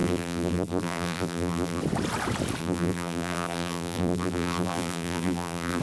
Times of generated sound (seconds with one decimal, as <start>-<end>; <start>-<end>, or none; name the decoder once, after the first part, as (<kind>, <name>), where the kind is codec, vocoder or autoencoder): 0.0-1.8 (vocoder, BigVGAN v2); 2.6-5.8